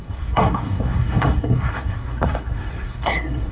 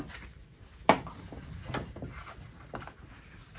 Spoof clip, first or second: first